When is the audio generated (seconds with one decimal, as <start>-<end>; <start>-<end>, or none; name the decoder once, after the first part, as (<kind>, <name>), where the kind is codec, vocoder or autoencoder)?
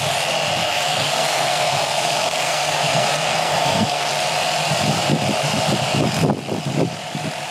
0.6-4.1 (codec, SNAC)